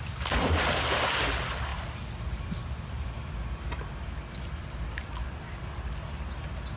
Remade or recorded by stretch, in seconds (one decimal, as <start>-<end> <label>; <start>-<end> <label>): 0.0-1.7 recorded; 1.7-5.6 remade; 5.6-6.8 recorded